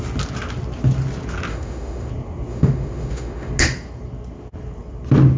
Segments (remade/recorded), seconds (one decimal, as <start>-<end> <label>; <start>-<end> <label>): 0.0-1.5 recorded; 1.5-2.1 remade; 2.1-2.5 recorded; 2.5-3.5 remade; 3.5-5.4 recorded

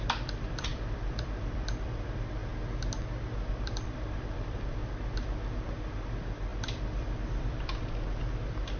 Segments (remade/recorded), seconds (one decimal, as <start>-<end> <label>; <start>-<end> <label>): 0.0-2.4 remade; 2.4-3.5 recorded; 3.5-4.8 remade; 4.8-6.1 recorded; 6.1-8.8 remade

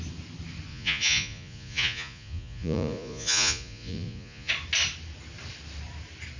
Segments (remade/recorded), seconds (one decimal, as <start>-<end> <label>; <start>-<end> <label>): 0.0-0.7 recorded; 0.7-4.5 remade; 4.5-6.4 recorded

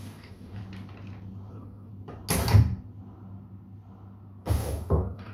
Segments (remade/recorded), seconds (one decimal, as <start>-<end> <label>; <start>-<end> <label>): 0.0-0.6 remade; 0.6-1.5 recorded; 1.5-1.9 remade; 1.9-4.4 recorded; 4.4-5.3 remade

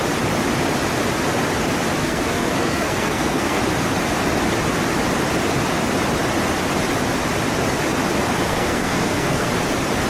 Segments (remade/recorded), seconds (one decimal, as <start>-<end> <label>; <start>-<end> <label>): 0.0-2.0 recorded; 2.0-3.6 remade; 3.6-8.4 recorded; 8.4-9.5 remade; 9.5-10.1 recorded

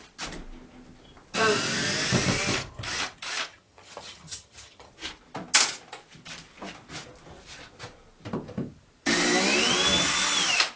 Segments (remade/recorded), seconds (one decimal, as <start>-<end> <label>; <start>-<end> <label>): 0.0-3.5 recorded; 3.5-4.9 remade; 4.9-10.8 recorded

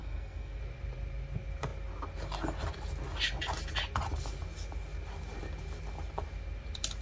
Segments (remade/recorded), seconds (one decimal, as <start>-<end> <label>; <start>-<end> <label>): 0.0-0.6 remade; 0.6-7.0 recorded

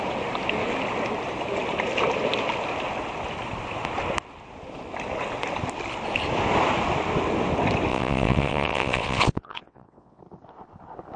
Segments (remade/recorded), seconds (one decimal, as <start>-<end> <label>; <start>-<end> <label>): 0.0-7.9 recorded; 7.9-10.2 remade; 10.2-11.2 recorded